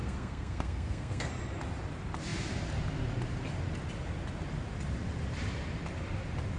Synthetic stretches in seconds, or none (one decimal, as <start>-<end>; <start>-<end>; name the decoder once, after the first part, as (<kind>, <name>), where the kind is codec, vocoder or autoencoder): 0.0-1.3 (codec, SNAC)